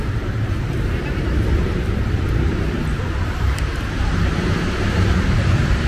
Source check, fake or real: fake